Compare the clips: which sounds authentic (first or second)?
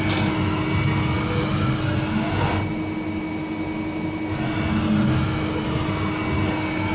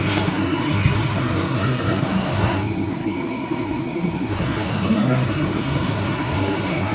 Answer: first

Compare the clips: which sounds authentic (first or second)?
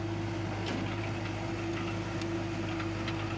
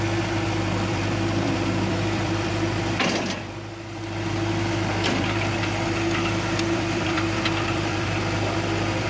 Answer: first